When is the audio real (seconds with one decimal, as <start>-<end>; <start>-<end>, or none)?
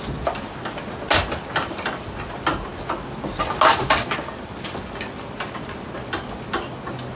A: 0.0-7.2